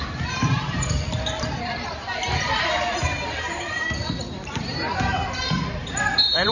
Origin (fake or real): fake